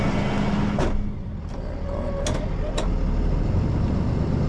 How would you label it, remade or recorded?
recorded